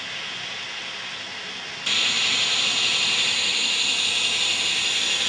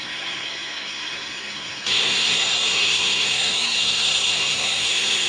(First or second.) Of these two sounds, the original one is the first